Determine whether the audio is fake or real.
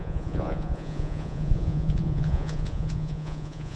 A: fake